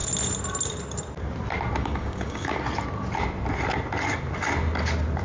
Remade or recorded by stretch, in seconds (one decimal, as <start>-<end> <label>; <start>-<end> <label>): 0.0-1.8 recorded; 1.8-2.6 remade; 2.6-5.2 recorded